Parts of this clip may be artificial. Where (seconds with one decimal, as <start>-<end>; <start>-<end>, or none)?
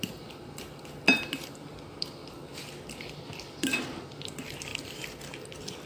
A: 0.0-2.2; 3.5-5.9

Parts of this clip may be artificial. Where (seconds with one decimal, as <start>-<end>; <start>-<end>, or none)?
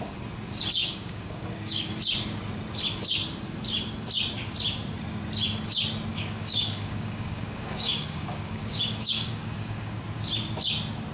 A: 0.8-1.9; 6.1-10.0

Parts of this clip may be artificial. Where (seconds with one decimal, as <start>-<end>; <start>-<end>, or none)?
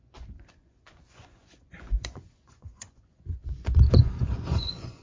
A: 0.0-5.0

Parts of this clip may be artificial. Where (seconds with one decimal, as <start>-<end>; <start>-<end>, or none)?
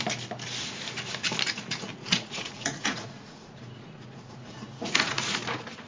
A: 1.9-5.4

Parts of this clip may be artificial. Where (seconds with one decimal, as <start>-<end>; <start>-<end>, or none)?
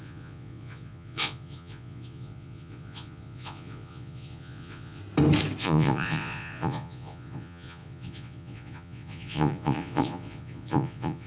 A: 0.0-5.0; 5.6-11.3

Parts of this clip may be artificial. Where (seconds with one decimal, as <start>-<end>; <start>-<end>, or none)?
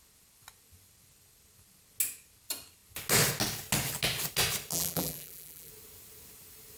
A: 4.7-5.7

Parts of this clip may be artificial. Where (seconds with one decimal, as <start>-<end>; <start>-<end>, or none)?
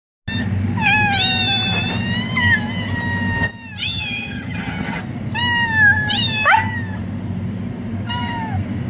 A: 3.8-5.0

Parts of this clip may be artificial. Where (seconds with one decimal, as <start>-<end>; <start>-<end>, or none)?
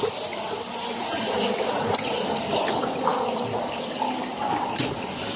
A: none